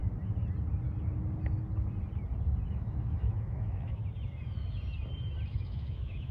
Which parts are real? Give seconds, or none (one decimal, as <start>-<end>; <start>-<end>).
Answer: 0.0-2.7; 4.0-5.5